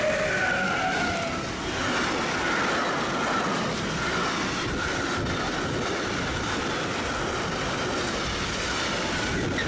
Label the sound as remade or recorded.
recorded